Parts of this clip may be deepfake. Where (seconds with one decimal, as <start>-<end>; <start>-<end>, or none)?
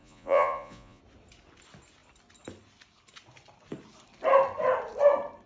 0.0-1.0